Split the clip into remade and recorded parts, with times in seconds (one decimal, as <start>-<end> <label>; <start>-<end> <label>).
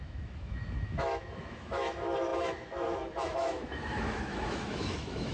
0.0-5.3 remade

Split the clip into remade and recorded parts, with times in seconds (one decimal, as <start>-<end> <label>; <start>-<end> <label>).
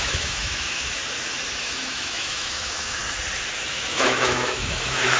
0.0-1.0 remade; 1.0-1.6 recorded; 1.6-3.0 remade; 3.0-3.7 recorded; 3.7-5.2 remade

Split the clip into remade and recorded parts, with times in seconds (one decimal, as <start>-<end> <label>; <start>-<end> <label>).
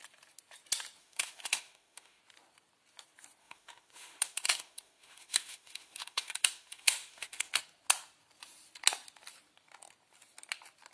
0.0-1.0 recorded; 1.0-2.2 remade; 2.2-3.4 recorded; 3.4-7.5 remade; 7.5-10.9 recorded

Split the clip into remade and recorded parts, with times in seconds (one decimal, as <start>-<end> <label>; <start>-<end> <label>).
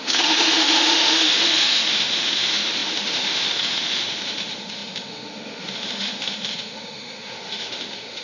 0.0-8.2 remade